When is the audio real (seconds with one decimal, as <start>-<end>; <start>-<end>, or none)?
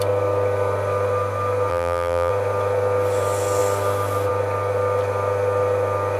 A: 0.0-1.7; 2.3-6.2